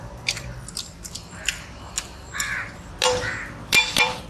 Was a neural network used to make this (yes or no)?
yes